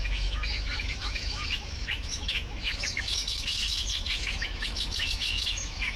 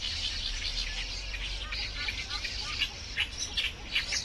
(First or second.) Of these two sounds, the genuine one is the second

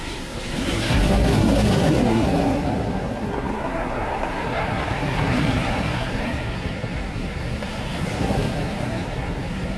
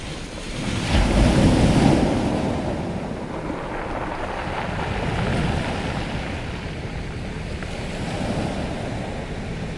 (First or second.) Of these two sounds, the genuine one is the second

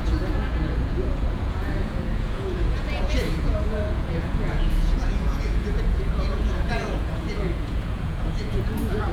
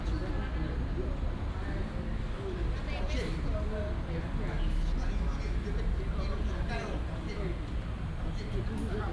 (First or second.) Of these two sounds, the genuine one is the second